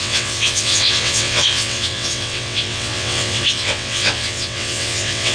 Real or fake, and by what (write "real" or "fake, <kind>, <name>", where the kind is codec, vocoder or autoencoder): fake, vocoder, WaveNeXt